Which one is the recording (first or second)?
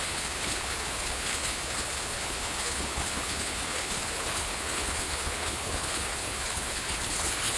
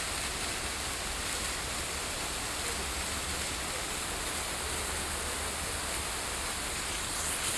second